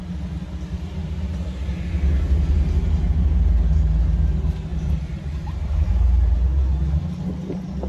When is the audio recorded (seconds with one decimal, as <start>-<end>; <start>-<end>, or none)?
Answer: 0.0-7.9